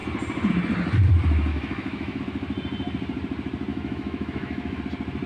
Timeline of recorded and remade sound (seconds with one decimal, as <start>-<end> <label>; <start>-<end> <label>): 0.0-1.5 recorded; 1.5-2.2 remade; 2.2-3.7 recorded; 3.7-4.8 remade; 4.8-5.3 recorded